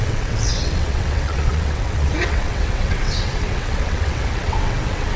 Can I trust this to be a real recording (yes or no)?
no